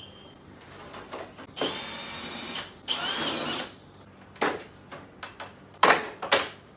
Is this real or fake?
real